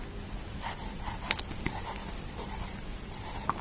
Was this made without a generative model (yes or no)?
yes